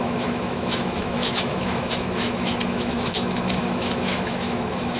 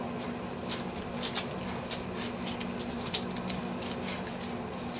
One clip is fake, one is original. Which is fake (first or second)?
first